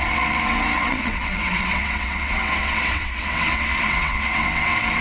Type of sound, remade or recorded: remade